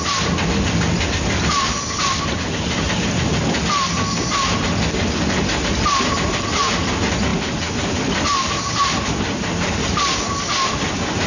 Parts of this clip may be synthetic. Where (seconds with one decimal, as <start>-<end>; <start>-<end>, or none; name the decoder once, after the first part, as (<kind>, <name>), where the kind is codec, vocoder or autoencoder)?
none

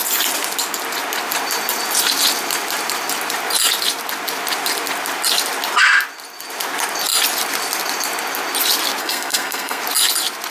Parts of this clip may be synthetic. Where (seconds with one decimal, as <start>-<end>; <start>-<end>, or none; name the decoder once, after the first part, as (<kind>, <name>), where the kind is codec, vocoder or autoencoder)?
9.0-9.8 (codec, SNAC)

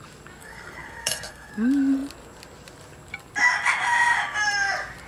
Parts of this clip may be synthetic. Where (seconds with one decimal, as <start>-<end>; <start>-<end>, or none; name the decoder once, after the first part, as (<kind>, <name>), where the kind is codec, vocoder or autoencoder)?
0.4-1.5 (codec, SNAC)

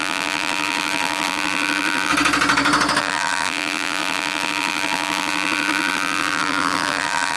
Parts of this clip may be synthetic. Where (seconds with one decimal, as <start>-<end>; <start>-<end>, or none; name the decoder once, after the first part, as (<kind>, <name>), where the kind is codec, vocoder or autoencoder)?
0.0-2.1 (vocoder, BigVGAN v2); 3.0-7.4

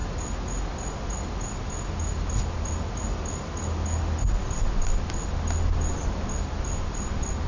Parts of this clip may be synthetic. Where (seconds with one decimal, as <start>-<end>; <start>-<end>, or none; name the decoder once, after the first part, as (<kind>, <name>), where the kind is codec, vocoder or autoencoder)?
none

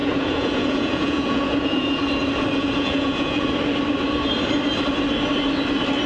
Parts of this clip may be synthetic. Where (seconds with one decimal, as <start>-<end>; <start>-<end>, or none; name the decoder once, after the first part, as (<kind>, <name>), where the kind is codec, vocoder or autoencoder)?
0.0-2.0 (vocoder, Vocos); 2.6-3.5

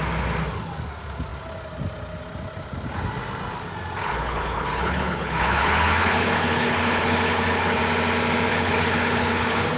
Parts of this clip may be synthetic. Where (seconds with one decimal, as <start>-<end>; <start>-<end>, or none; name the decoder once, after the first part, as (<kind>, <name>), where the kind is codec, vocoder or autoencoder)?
4.0-7.8 (codec, HILCodec); 8.5-9.8

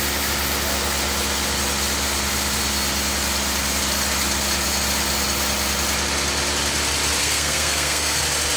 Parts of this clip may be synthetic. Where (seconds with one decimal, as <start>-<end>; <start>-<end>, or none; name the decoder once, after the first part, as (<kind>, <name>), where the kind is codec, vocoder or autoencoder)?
7.2-8.2 (codec, SNAC)